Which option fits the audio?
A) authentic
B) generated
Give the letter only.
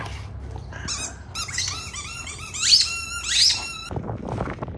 A